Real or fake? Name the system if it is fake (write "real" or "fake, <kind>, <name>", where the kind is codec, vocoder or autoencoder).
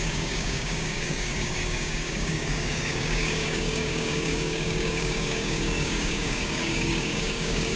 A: fake, codec, DAC